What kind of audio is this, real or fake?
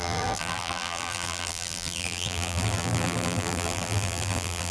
fake